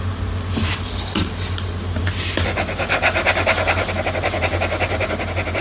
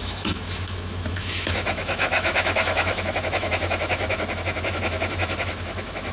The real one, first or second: first